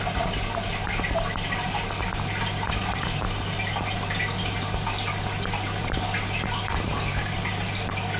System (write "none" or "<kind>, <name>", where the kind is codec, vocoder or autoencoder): none